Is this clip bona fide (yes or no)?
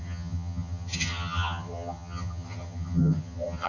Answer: no